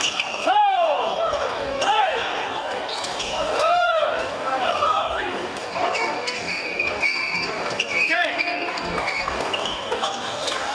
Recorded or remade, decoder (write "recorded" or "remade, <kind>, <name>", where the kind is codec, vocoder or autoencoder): remade, codec, DAC